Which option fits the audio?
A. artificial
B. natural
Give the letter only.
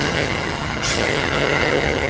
A